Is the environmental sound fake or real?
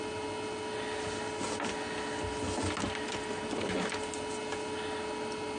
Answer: real